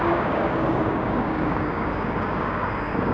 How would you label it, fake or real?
fake